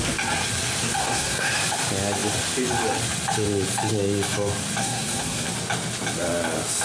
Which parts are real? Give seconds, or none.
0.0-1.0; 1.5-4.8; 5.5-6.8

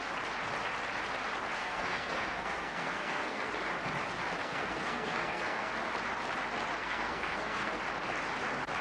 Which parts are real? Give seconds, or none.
0.0-1.6; 3.5-4.4; 5.7-6.8; 7.8-8.8

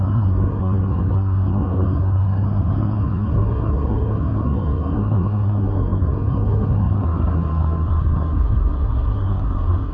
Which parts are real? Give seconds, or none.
none

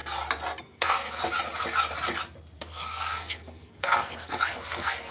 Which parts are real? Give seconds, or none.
0.0-0.6; 1.2-2.6

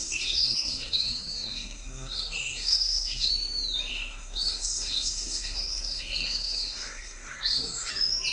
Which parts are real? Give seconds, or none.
3.3-3.9; 7.9-8.3

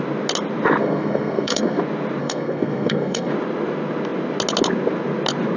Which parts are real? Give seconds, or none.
0.0-0.8; 1.8-2.2; 3.3-5.6